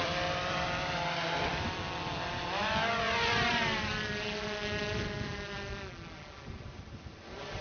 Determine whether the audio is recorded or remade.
recorded